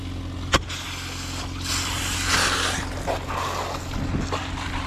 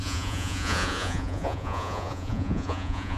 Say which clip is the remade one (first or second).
second